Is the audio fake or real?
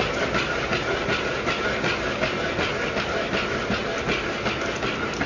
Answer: real